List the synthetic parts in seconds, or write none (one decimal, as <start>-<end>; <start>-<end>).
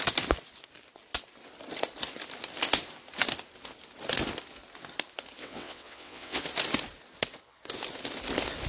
5.4-6.4